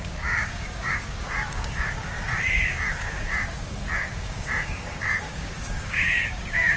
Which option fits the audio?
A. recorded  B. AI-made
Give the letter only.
B